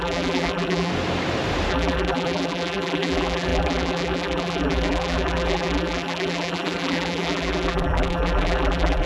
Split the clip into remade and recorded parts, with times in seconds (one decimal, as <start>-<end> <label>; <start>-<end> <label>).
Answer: 0.0-0.9 remade; 0.9-1.7 recorded; 1.7-9.1 remade